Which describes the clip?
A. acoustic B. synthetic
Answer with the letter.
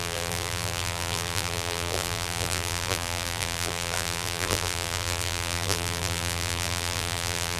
B